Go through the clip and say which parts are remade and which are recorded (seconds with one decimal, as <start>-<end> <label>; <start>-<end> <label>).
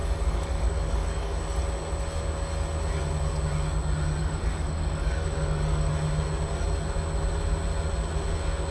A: 0.0-1.4 remade; 1.4-4.2 recorded; 4.2-5.9 remade; 5.9-8.7 recorded